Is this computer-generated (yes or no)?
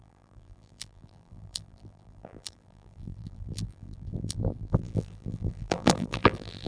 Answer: yes